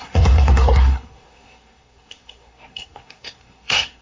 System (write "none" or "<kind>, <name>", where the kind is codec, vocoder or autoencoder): codec, SNAC